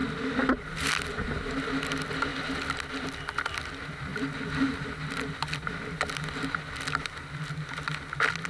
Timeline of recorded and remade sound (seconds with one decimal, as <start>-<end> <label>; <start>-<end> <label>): 0.0-8.5 recorded